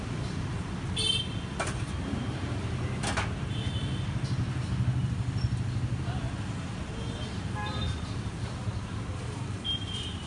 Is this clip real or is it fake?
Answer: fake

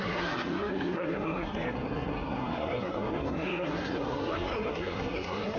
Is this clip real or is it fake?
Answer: fake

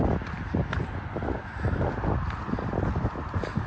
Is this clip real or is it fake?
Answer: real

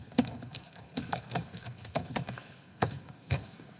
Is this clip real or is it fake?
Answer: fake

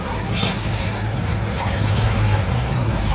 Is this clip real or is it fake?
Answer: fake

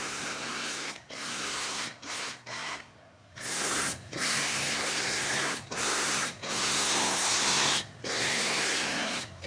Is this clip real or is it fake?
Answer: fake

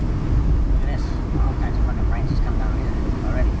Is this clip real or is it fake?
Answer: real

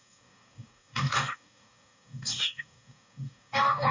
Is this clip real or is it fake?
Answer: fake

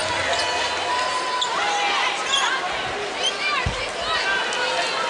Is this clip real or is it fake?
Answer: real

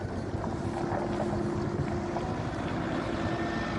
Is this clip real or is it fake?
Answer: real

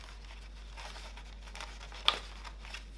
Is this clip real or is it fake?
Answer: real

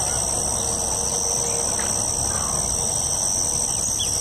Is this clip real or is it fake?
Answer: real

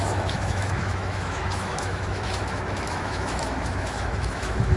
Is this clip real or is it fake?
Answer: fake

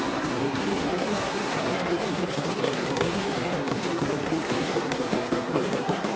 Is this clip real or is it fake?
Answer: fake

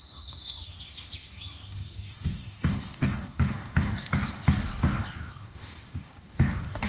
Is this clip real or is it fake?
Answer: fake